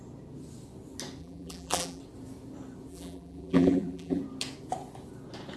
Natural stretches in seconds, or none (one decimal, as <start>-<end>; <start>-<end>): 0.0-1.2; 2.0-2.9; 4.2-5.6